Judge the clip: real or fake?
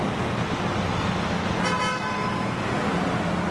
real